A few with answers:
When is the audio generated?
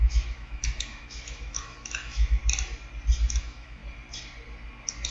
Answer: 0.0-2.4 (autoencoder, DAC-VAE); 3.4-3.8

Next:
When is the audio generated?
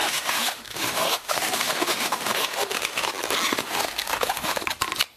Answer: 0.0-3.1 (autoencoder, DAC-VAE); 3.5-4.6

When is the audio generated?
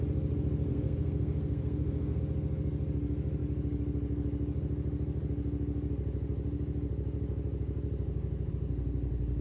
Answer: 0.7-2.2 (codec, SNAC)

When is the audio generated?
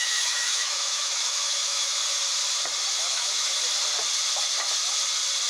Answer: 0.0-2.0 (autoencoder, DAC-VAE); 3.0-3.5